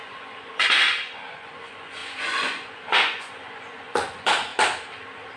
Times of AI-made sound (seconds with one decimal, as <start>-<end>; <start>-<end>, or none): 0.0-4.5